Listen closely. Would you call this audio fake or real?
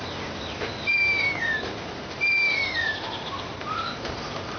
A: fake